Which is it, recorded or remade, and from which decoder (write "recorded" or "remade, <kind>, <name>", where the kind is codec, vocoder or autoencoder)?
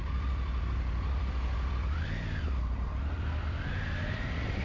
remade, vocoder, BigVGAN v2